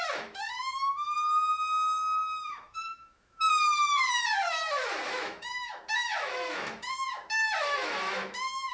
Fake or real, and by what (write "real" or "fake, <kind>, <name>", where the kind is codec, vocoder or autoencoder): fake, autoencoder, DAC-VAE